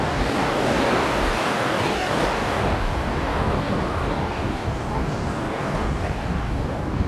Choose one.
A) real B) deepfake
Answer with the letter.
B